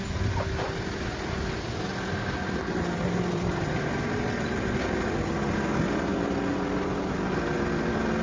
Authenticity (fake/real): real